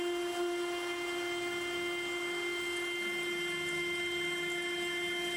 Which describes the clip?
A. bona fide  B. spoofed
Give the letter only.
A